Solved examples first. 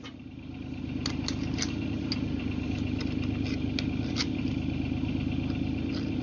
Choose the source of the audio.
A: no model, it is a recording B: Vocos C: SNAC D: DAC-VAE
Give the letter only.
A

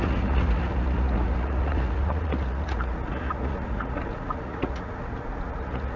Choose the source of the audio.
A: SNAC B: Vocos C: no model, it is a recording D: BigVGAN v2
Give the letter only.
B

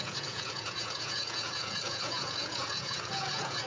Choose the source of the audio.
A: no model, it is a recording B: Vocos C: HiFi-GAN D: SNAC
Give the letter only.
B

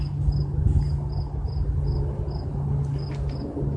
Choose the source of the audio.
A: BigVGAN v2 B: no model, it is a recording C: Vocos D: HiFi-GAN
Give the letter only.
B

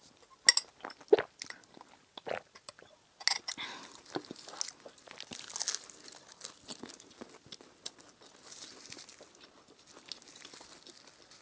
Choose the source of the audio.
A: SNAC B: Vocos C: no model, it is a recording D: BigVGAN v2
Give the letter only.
C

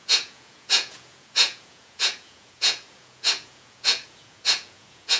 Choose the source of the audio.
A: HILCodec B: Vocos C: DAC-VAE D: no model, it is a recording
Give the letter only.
B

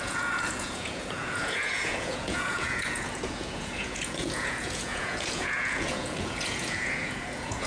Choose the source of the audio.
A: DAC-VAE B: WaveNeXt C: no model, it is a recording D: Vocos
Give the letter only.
D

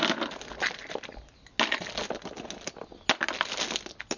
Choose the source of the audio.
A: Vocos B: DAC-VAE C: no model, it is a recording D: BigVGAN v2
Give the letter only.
C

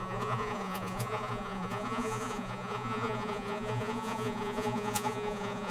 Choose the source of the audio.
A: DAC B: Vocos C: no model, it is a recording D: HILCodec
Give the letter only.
B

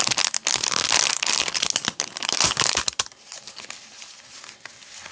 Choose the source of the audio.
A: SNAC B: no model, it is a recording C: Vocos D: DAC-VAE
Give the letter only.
B